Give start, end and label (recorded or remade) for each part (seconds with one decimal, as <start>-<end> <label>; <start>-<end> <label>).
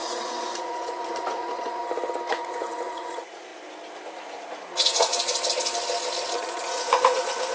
0.0-1.8 remade; 1.8-2.3 recorded; 2.3-3.5 remade; 3.5-4.1 recorded; 4.1-5.1 remade; 5.1-6.4 recorded; 6.4-7.5 remade